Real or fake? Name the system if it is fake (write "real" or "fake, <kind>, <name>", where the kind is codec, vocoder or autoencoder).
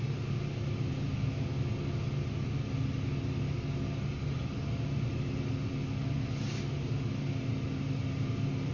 real